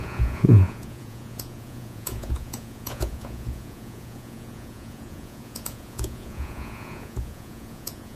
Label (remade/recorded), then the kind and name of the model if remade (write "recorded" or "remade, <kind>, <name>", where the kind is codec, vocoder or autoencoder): remade, vocoder, Vocos